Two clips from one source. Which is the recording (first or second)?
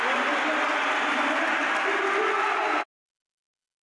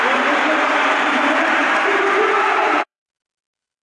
first